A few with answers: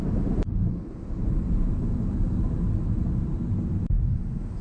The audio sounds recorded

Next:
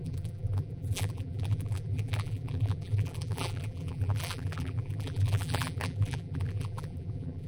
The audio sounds remade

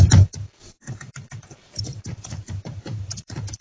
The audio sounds remade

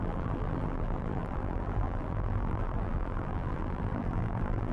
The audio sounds remade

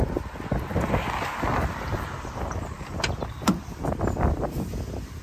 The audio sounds recorded